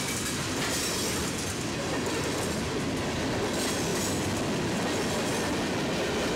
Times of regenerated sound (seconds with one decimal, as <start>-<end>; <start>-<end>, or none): none